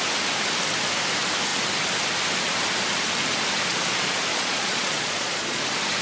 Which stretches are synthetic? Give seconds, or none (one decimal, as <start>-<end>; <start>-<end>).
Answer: 4.3-5.6

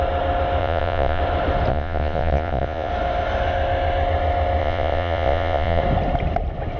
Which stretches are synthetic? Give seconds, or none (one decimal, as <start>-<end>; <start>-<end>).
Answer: 0.6-1.2; 1.7-2.9; 4.6-5.8